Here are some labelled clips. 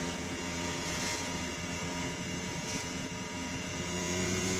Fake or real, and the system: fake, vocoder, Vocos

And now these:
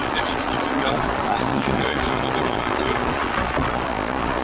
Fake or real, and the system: fake, vocoder, Vocos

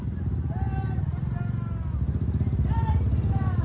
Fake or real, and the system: real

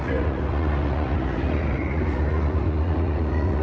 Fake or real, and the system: fake, vocoder, Vocos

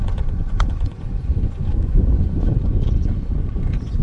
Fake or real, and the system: fake, vocoder, Vocos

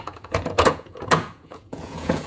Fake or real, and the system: fake, vocoder, Vocos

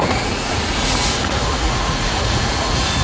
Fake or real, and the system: fake, vocoder, Vocos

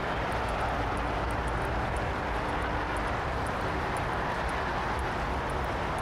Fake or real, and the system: real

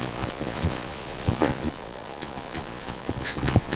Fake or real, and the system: fake, vocoder, Vocos